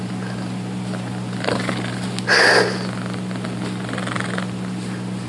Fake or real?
real